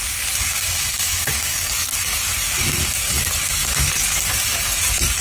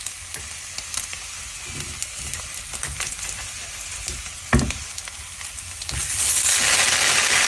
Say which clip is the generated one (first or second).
first